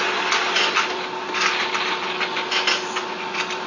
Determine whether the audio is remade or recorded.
recorded